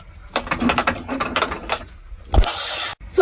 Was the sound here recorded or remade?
recorded